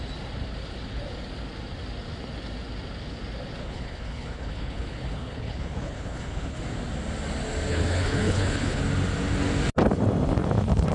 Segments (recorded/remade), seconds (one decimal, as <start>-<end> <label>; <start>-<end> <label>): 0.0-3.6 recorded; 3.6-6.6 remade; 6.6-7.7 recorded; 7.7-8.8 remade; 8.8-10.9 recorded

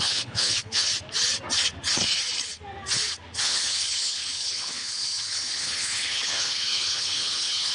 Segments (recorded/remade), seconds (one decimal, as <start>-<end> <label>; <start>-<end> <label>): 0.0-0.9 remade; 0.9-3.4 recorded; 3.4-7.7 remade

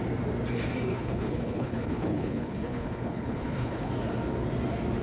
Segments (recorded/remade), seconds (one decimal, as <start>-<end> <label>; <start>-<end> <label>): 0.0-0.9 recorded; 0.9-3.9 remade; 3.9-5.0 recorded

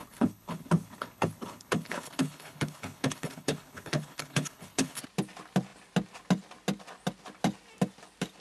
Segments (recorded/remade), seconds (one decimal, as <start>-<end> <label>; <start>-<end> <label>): 0.0-5.0 remade; 5.0-8.4 recorded

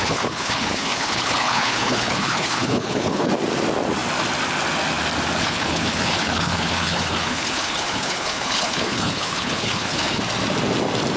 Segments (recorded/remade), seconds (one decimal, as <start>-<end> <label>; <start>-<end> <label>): 0.0-3.3 remade; 3.3-5.4 recorded; 5.4-10.2 remade; 10.2-11.2 recorded